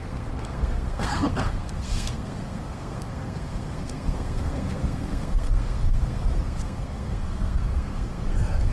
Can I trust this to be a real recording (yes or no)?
no